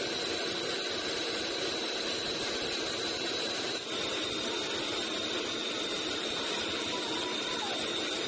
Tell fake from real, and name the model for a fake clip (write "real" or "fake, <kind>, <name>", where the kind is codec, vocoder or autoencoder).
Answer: real